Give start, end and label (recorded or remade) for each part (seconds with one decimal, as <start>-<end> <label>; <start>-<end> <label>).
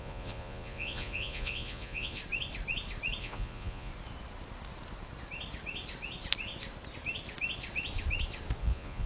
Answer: 0.0-2.2 remade; 2.2-3.2 recorded; 3.2-3.9 remade; 3.9-8.6 recorded; 8.6-9.1 remade